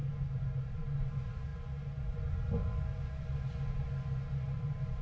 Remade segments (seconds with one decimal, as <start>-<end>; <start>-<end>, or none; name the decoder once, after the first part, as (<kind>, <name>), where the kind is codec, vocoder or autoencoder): 0.0-1.5 (vocoder, BigVGAN v2); 4.5-5.0